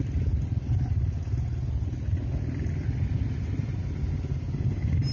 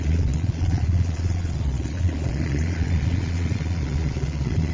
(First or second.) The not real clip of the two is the second